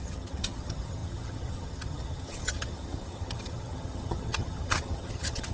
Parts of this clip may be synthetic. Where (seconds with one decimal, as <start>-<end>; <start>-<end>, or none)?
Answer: 0.0-5.5